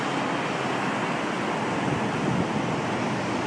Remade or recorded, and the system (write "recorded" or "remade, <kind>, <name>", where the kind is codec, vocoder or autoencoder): recorded